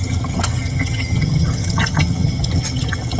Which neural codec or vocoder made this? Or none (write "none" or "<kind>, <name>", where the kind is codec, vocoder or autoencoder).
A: vocoder, HiFi-GAN